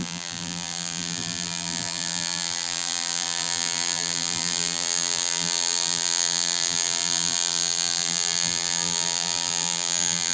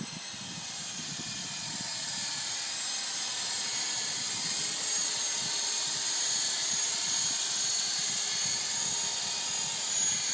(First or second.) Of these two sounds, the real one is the second